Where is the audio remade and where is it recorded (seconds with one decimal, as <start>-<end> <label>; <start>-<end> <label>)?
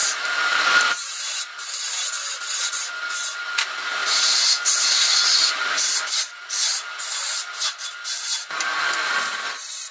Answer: 0.0-1.3 remade; 1.3-9.9 recorded